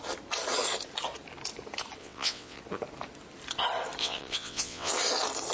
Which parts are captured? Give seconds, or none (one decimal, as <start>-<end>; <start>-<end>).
0.0-2.0; 2.6-4.0; 4.9-5.5